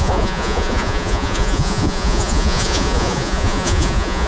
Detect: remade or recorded remade